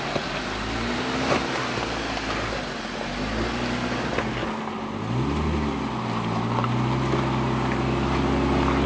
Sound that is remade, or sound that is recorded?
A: recorded